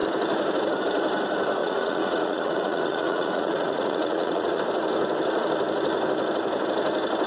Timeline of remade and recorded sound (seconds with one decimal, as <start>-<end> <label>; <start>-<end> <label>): 0.0-1.6 recorded; 1.6-4.6 remade; 4.6-7.3 recorded